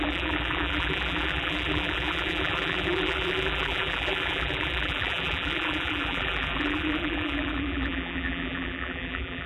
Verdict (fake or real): fake